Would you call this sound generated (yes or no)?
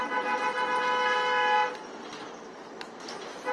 no